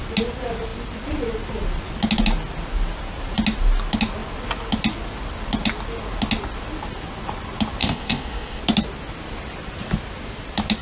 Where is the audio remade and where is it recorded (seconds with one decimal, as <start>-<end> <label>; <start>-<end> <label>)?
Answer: 0.0-7.8 recorded; 7.8-8.6 remade; 8.6-10.8 recorded